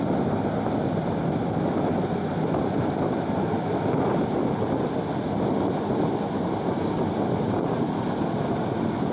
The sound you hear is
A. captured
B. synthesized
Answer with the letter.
A